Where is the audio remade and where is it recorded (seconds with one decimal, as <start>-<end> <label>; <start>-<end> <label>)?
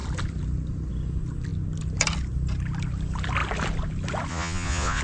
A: 0.0-4.3 recorded; 4.3-5.0 remade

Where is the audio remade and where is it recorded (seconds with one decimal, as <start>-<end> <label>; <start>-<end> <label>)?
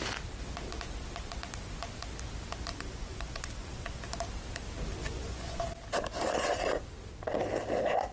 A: 0.0-2.7 recorded; 2.7-4.0 remade; 4.0-5.0 recorded; 5.0-5.6 remade; 5.6-8.1 recorded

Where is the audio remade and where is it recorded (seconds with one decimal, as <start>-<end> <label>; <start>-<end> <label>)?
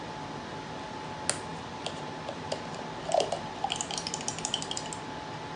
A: 0.0-5.6 recorded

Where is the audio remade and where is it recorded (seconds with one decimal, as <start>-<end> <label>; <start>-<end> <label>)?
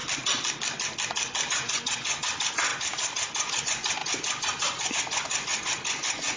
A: 0.0-1.5 recorded; 1.5-6.4 remade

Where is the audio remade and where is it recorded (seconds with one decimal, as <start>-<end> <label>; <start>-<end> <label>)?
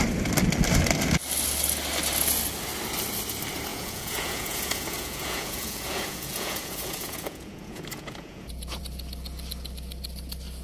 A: 0.0-3.7 recorded; 3.7-8.8 remade; 8.8-10.6 recorded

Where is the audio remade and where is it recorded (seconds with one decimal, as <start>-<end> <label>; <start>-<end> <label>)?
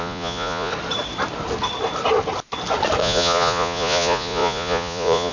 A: 0.0-0.7 remade; 0.7-3.0 recorded; 3.0-5.3 remade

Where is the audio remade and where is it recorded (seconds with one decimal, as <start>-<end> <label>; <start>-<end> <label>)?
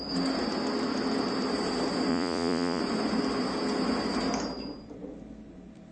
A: 0.0-2.1 recorded; 2.1-2.8 remade; 2.8-5.9 recorded